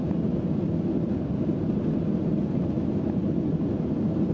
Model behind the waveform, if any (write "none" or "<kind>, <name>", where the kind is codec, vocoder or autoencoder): none